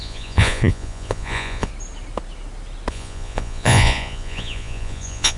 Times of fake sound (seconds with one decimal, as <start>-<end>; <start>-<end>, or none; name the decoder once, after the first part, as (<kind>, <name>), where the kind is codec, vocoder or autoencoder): 0.0-1.7 (vocoder, Vocos); 2.9-5.4